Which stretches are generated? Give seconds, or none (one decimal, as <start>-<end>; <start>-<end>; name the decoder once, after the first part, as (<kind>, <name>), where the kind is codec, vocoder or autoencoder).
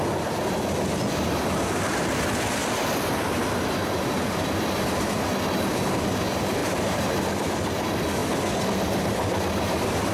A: 6.6-7.2 (vocoder, BigVGAN v2)